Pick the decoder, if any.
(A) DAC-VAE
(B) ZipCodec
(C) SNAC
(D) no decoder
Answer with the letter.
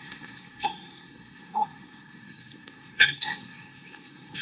C